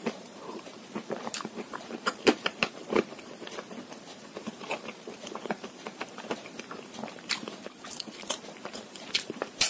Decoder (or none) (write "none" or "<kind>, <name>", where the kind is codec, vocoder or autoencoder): vocoder, BigVGAN v2